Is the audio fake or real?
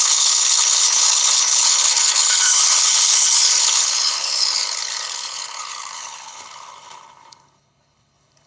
fake